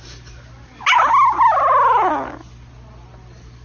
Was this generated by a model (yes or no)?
no